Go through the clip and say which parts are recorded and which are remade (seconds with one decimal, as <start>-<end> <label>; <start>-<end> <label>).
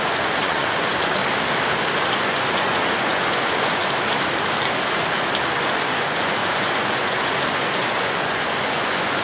0.0-1.2 remade; 1.2-2.2 recorded; 2.2-3.8 remade; 3.8-5.6 recorded; 5.6-9.2 remade